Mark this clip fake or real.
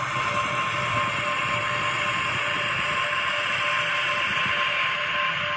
real